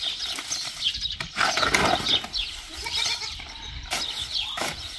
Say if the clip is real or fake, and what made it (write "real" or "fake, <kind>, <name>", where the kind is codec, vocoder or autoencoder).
real